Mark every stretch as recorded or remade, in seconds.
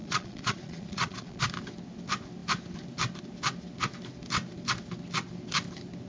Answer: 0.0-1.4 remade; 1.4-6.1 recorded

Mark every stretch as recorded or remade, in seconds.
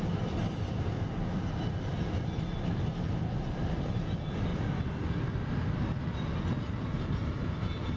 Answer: 0.0-8.0 recorded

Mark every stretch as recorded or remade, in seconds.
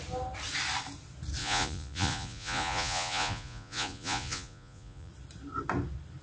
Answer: 0.0-1.4 recorded; 1.4-5.1 remade; 5.1-6.2 recorded